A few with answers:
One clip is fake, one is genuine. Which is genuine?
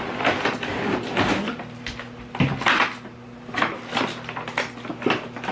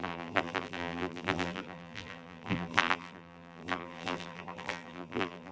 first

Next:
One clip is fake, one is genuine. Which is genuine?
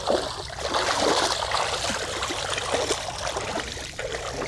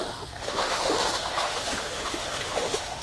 first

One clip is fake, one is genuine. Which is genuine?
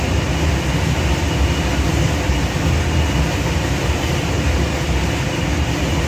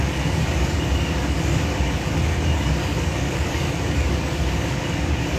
first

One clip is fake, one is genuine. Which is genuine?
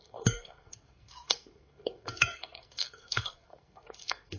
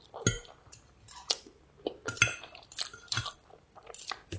second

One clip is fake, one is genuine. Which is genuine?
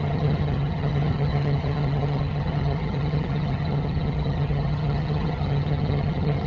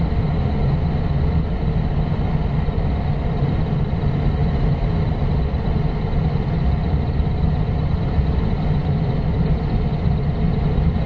second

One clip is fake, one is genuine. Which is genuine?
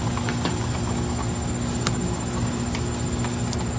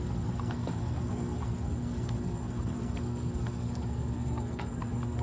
first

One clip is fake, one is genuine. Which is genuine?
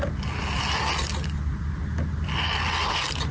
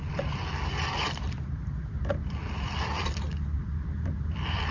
first